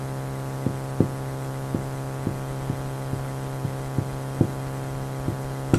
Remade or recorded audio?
recorded